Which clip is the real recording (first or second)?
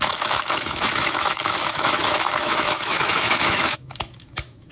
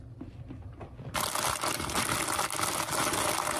second